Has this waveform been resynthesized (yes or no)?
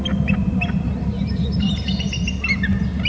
no